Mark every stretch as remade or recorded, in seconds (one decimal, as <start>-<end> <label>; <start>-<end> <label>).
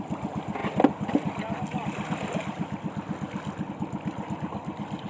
0.0-5.1 recorded